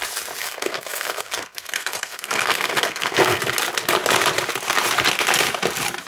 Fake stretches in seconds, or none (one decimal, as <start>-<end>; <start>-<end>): 0.4-3.4